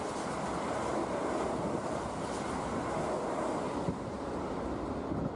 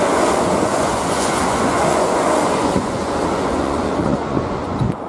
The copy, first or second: second